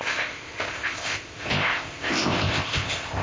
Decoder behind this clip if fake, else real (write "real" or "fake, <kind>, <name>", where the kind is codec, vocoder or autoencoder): fake, codec, ZipCodec